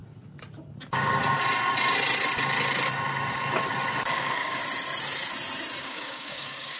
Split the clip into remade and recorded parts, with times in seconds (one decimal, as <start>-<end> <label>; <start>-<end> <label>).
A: 0.0-4.1 recorded; 4.1-4.6 remade; 4.6-5.8 recorded; 5.8-6.8 remade